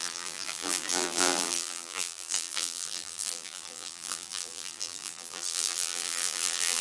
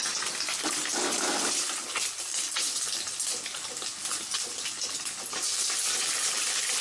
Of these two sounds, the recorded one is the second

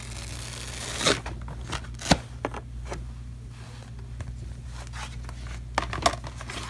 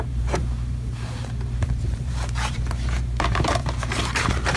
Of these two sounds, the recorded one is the first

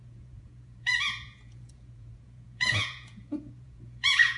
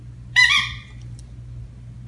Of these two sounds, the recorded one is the second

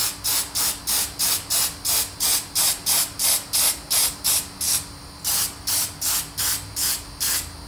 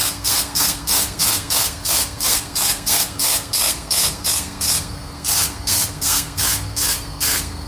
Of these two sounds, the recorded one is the first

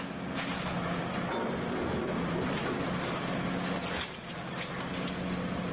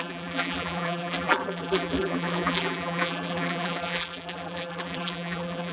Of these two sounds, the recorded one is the first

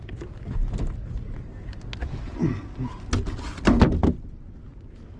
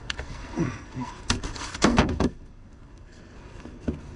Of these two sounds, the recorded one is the first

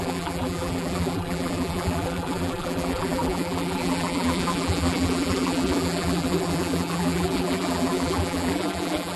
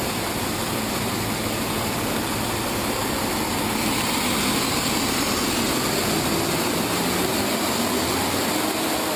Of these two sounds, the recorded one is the second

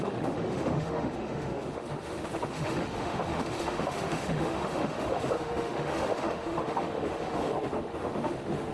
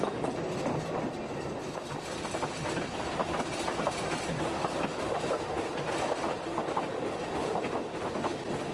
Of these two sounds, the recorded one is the second